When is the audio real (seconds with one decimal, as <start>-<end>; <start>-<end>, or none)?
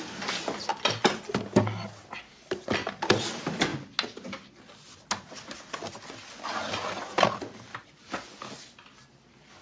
0.0-9.6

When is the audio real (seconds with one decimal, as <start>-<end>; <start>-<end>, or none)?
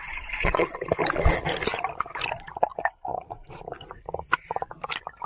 0.8-3.1; 3.6-5.3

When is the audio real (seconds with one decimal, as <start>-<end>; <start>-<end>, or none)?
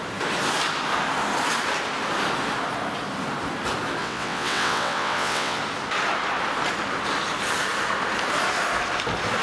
0.0-4.0; 5.6-9.4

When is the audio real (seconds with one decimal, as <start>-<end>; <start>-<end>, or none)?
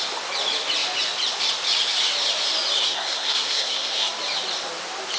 0.0-2.8; 4.1-5.2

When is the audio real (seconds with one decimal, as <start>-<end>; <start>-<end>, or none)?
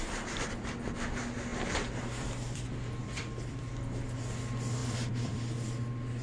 0.0-1.5; 2.6-3.0; 3.7-4.8; 5.4-6.2